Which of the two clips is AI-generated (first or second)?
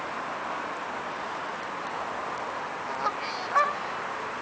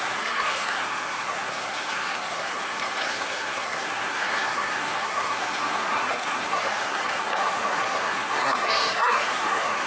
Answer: second